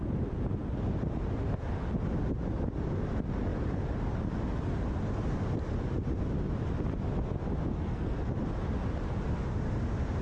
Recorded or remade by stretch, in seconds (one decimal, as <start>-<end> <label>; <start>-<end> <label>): 0.0-7.7 recorded; 7.7-8.3 remade; 8.3-10.2 recorded